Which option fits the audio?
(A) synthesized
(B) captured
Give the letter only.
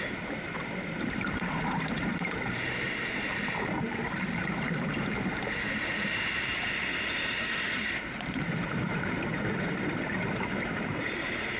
A